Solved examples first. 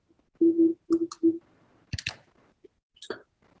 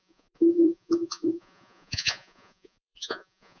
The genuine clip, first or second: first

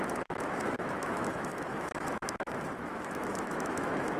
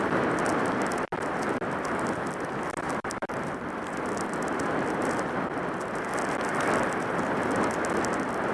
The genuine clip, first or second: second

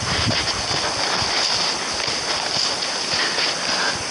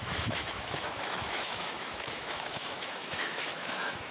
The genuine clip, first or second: first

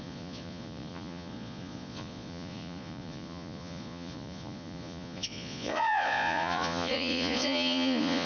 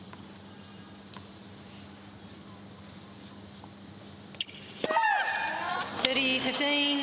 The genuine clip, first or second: second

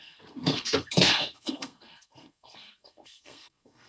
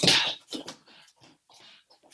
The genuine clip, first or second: second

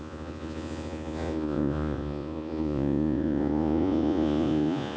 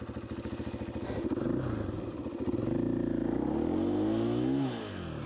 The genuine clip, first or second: second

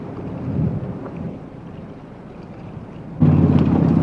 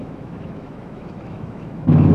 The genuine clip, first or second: first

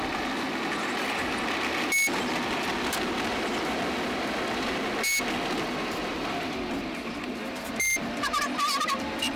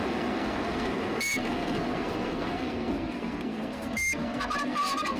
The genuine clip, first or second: first